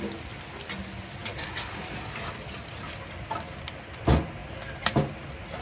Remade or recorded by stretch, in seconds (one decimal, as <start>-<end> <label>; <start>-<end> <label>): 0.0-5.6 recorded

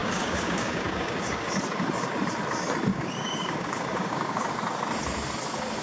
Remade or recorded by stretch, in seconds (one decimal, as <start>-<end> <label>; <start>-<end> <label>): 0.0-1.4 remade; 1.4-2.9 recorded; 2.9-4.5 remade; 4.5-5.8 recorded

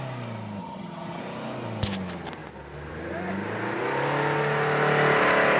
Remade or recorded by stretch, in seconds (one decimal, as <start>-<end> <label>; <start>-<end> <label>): 0.0-0.6 recorded; 0.6-1.2 remade; 1.2-5.6 recorded

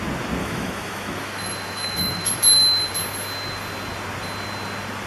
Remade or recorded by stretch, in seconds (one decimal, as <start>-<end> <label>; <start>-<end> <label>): 0.0-0.4 recorded; 0.4-2.3 remade; 2.3-5.1 recorded